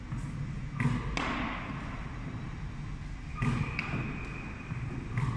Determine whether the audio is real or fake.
real